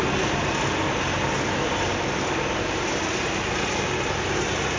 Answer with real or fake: real